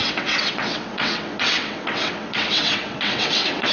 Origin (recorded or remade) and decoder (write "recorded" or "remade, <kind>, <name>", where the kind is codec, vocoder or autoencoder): remade, vocoder, WaveNeXt